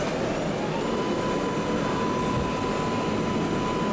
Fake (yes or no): no